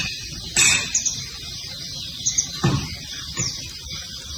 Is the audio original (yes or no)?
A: yes